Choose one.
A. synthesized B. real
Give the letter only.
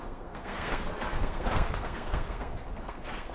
A